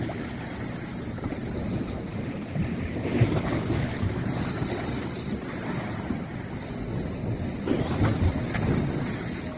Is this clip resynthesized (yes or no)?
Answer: no